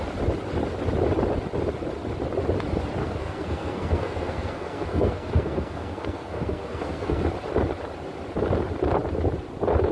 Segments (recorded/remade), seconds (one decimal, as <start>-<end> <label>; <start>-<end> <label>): 0.0-3.0 recorded; 3.0-7.2 remade; 7.2-9.9 recorded